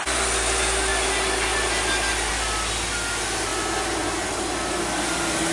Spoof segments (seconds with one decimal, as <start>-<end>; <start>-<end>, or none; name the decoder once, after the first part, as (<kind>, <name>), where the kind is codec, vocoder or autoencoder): none